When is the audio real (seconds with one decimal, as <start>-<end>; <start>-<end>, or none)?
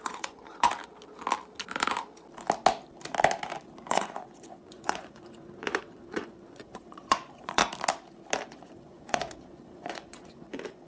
0.7-3.9; 7.6-8.5